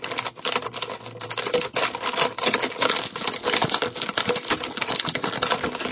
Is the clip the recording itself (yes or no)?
yes